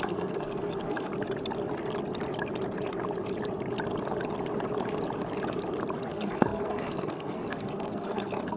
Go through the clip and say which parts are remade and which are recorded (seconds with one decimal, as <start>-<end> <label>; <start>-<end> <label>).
0.0-1.1 remade; 1.1-6.1 recorded; 6.1-8.6 remade